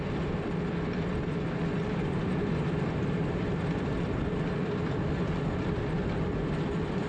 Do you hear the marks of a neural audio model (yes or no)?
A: no